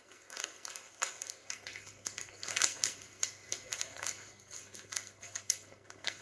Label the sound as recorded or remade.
remade